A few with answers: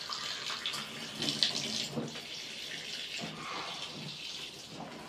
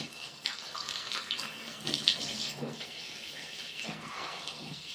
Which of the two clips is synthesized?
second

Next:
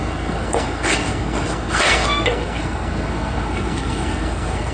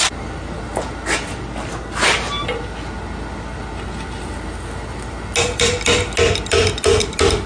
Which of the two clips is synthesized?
first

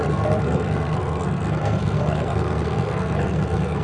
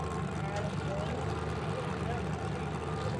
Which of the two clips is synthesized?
first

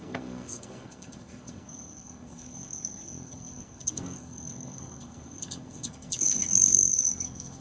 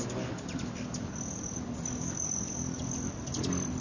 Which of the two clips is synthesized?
first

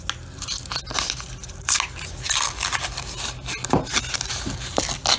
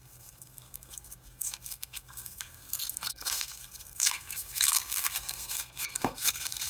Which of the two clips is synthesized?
second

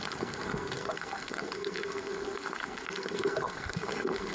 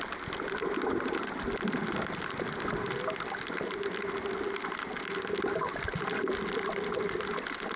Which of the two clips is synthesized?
first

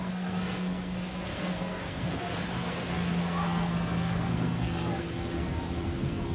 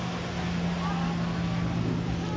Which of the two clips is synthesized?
first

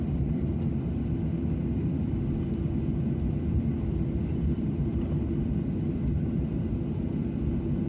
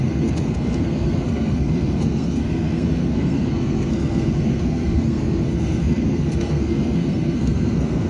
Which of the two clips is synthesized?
second